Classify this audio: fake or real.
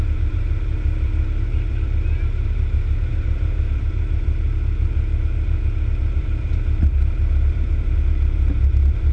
fake